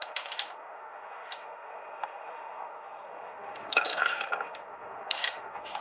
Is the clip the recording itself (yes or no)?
no